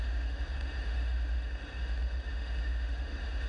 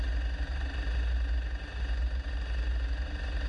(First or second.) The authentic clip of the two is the second